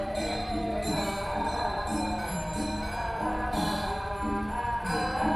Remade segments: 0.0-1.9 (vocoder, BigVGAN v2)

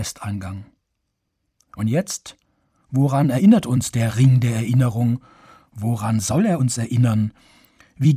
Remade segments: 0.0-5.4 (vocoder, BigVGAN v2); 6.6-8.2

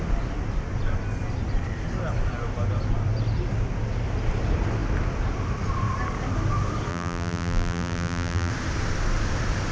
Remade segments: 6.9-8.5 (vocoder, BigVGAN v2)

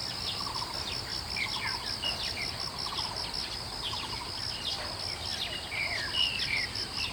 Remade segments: none